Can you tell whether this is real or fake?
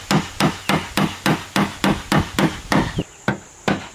real